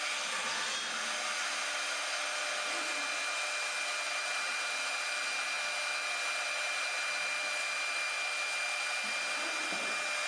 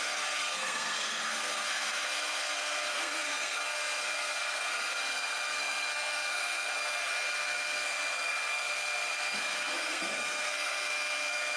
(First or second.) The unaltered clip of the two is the first